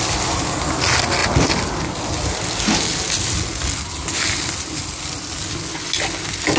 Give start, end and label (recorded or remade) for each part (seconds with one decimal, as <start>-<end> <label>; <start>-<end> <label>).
0.0-6.6 recorded

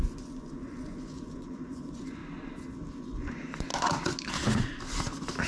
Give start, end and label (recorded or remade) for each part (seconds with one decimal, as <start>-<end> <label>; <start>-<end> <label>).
0.0-2.2 remade; 2.2-3.0 recorded; 3.0-3.7 remade; 3.7-5.5 recorded

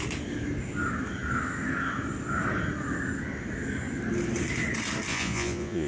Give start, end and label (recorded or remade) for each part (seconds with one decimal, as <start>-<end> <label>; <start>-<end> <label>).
0.0-5.1 recorded; 5.1-5.9 remade

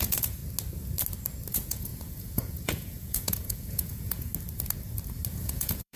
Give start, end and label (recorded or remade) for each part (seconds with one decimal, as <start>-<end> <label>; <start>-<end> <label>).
0.0-0.4 remade; 0.4-1.5 recorded; 1.5-4.3 remade; 4.3-5.3 recorded; 5.3-6.0 remade

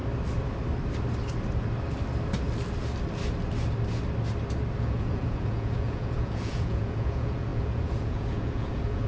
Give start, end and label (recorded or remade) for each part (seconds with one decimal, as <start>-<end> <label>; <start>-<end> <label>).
0.0-4.8 recorded; 4.8-9.1 remade

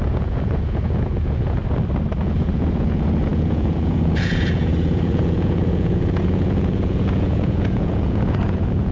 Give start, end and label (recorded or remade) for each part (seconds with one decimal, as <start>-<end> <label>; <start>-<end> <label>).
0.0-1.6 remade; 1.6-2.2 recorded; 2.2-8.9 remade